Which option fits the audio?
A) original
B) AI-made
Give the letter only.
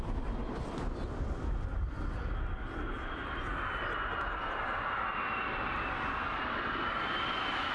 A